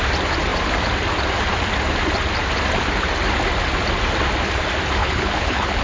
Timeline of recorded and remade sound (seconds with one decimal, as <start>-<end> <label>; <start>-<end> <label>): 0.0-5.0 recorded; 5.0-5.8 remade